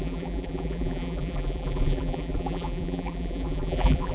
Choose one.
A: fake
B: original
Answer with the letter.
A